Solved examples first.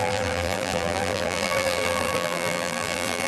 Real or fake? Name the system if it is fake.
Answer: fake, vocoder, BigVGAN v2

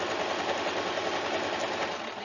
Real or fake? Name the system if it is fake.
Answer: real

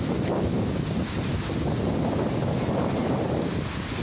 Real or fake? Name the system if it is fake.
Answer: real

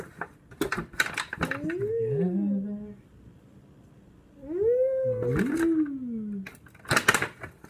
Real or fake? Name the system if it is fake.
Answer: real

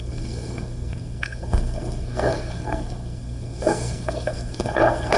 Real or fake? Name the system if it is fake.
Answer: fake, codec, SNAC